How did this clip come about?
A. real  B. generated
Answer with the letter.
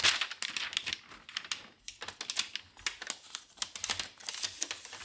A